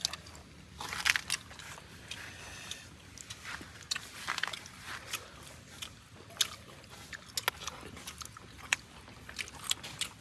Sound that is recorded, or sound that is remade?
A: recorded